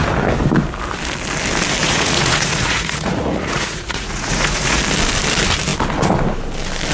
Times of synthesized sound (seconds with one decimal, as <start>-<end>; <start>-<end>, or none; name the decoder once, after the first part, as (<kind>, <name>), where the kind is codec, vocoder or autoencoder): 1.8-4.8 (vocoder, Vocos)